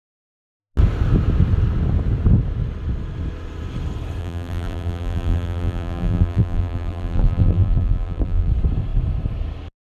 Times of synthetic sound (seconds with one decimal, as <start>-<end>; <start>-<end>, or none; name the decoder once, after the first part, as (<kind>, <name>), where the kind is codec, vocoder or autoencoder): 4.2-8.5 (vocoder, BigVGAN v2)